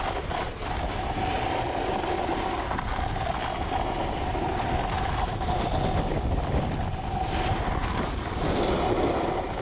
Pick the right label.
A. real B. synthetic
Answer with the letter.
A